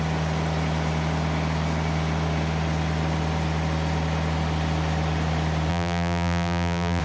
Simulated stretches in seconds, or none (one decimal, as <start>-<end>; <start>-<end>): 5.7-7.0